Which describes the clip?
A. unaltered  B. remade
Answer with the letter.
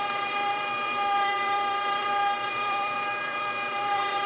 B